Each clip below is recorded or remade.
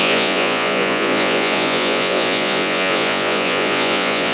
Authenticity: remade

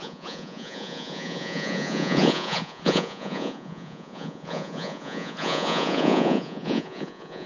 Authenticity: remade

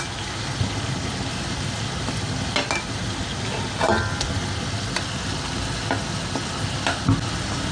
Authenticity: recorded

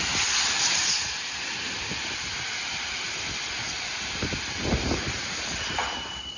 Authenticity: recorded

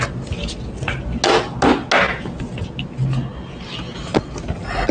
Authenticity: recorded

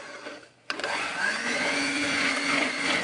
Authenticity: remade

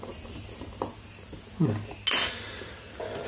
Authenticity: recorded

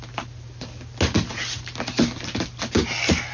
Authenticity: recorded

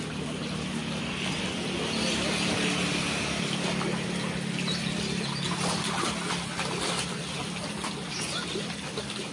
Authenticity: recorded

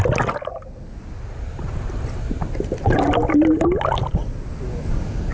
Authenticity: recorded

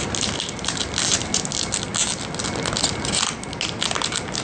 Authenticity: recorded